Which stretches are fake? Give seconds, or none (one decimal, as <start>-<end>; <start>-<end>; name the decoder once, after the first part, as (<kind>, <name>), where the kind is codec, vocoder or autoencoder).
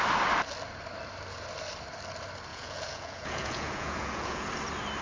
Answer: 2.5-4.5 (vocoder, Vocos)